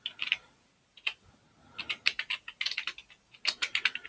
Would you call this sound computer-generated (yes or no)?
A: no